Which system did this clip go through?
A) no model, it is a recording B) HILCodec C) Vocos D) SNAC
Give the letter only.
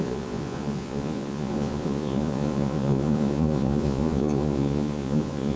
C